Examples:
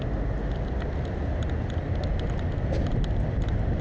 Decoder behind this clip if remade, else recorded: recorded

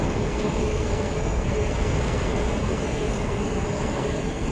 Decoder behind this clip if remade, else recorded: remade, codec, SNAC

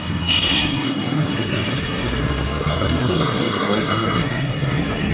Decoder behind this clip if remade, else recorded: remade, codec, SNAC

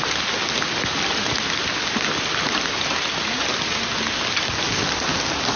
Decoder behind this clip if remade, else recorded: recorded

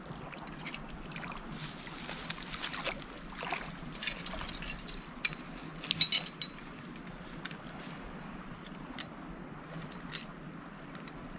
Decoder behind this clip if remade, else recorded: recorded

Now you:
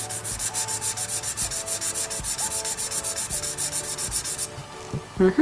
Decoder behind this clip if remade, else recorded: recorded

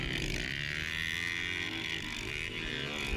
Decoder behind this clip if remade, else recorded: recorded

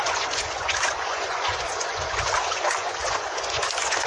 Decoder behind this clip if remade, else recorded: remade, vocoder, Vocos